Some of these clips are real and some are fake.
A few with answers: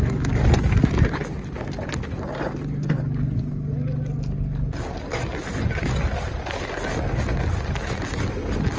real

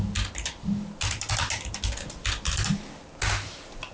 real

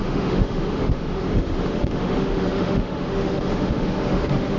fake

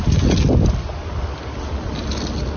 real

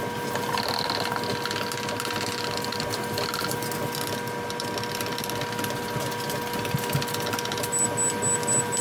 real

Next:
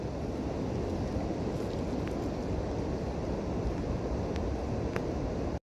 real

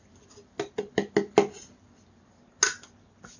real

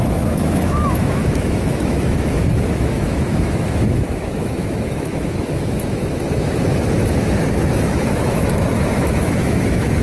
fake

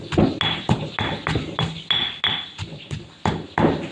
real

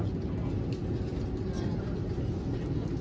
real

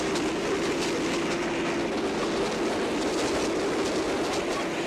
real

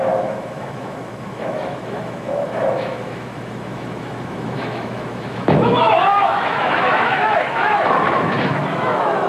fake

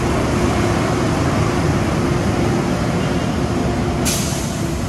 real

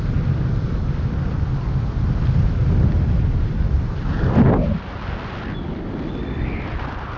real